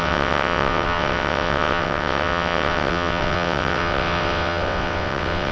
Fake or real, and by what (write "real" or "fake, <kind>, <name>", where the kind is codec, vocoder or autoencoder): fake, vocoder, WaveNeXt